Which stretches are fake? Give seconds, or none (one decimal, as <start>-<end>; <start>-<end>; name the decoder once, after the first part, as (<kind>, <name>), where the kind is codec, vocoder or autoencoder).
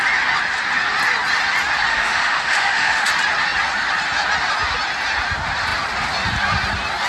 1.9-3.1 (autoencoder, DAC-VAE)